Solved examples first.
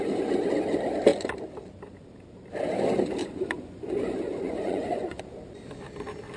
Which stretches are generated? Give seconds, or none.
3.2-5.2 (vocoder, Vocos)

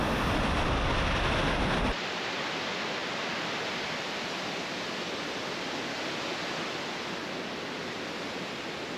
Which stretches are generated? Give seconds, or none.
none

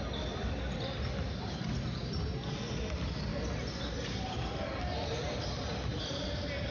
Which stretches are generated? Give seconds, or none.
none

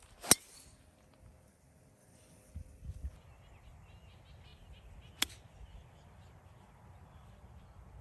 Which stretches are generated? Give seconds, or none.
2.0-2.5 (vocoder, Vocos)

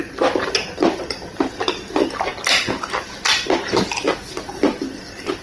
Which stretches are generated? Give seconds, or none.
none

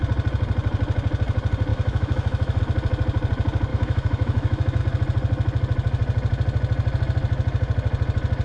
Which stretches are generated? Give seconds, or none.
1.7-2.6 (autoencoder, DAC-VAE); 3.7-4.8